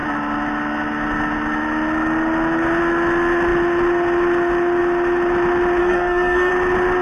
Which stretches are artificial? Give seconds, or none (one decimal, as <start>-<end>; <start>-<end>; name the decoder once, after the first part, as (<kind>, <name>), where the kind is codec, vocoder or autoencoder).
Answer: 5.8-6.5 (codec, SNAC)

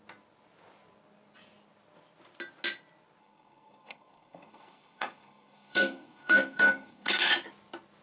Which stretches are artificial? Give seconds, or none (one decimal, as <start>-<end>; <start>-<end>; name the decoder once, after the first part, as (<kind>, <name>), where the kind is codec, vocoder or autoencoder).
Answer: 3.2-7.3 (codec, SNAC)

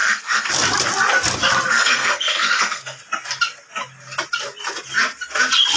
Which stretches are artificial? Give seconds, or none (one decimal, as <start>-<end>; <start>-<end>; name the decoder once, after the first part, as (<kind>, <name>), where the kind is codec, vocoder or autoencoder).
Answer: 0.0-0.5 (codec, SNAC); 1.7-3.0

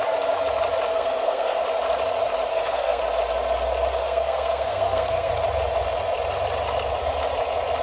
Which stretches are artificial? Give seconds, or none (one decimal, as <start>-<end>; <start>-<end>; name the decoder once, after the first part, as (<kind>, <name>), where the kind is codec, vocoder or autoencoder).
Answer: 0.9-1.6 (codec, SNAC); 2.5-3.0; 4.0-5.3

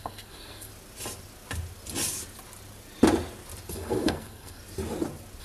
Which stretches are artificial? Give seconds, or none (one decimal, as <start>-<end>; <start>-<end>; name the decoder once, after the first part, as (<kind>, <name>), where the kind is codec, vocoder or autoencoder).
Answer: 0.0-0.7 (codec, SNAC); 3.7-4.6

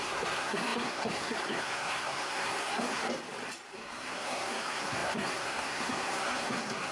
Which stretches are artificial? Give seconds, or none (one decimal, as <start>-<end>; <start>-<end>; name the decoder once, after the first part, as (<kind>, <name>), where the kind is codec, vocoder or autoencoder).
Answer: 0.0-3.0 (codec, SNAC); 3.7-6.9

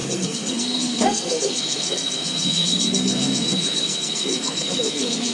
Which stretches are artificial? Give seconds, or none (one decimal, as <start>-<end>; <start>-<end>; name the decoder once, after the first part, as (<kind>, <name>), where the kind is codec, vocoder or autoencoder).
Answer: 0.0-5.3 (codec, SNAC)